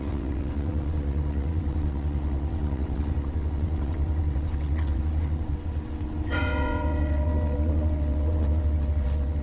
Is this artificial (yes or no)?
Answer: yes